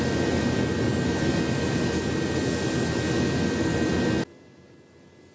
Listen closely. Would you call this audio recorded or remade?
recorded